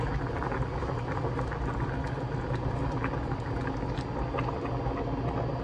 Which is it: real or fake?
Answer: real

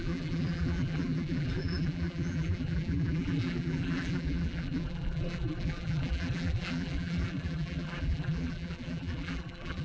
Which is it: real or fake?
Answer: fake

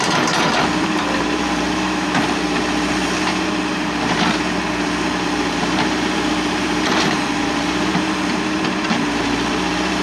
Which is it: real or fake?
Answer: fake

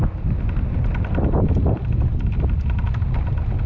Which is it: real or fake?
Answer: real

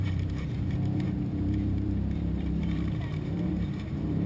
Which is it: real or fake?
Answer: fake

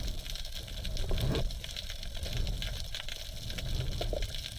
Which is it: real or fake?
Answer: real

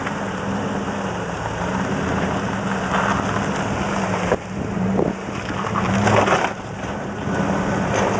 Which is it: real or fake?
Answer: real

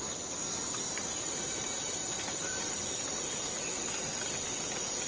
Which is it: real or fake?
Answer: real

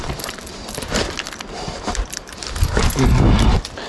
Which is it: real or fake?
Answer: real